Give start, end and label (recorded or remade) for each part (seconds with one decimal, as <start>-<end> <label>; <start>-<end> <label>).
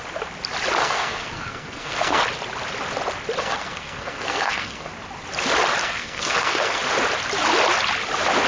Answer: 0.0-0.8 recorded; 0.8-2.2 remade; 2.2-3.4 recorded; 3.4-4.9 remade; 4.9-5.8 recorded; 5.8-6.8 remade; 6.8-8.5 recorded